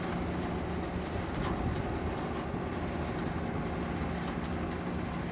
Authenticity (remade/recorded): recorded